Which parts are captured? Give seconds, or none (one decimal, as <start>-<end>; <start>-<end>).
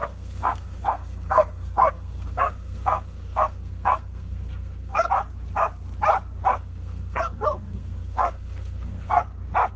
5.1-6.5; 9.2-9.8